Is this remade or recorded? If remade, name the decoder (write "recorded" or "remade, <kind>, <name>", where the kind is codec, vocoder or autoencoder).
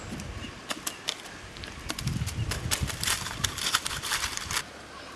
remade, vocoder, BigVGAN v2